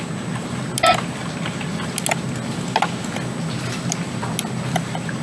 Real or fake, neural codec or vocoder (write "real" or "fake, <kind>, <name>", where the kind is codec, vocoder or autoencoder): real